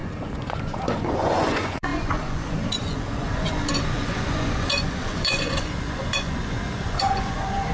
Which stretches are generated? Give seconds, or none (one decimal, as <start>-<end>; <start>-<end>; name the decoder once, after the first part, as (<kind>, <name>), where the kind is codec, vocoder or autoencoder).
0.0-7.7 (vocoder, Vocos)